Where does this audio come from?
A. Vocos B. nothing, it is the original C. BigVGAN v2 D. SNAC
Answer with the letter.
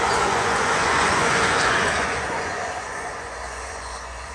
A